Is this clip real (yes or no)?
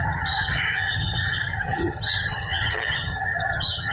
no